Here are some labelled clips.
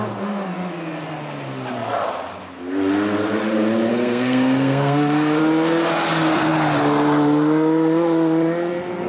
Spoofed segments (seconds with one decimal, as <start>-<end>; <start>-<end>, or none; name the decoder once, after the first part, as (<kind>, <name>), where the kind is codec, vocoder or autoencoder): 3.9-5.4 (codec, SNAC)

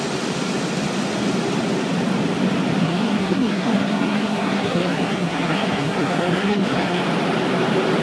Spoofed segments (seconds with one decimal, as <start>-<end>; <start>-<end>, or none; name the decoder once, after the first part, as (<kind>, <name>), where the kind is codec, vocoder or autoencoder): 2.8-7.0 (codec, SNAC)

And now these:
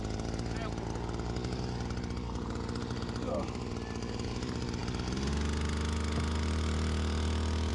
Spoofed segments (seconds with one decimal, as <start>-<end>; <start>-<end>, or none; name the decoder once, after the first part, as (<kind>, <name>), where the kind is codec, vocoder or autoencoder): none

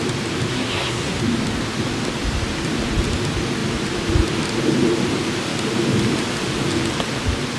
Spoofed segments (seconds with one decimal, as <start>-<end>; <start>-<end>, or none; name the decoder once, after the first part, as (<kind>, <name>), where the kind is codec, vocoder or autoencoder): 0.5-1.2 (codec, SNAC)

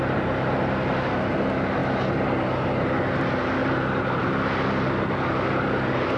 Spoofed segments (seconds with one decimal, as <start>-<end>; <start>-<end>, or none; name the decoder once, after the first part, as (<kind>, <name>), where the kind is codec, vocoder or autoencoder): none

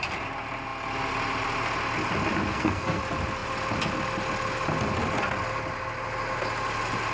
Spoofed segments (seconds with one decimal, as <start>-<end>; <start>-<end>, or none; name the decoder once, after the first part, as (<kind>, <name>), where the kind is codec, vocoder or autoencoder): 2.5-3.0 (codec, SNAC)

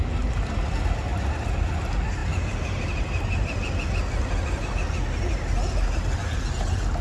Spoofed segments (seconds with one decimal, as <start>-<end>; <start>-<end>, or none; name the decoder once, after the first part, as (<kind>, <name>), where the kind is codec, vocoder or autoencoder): none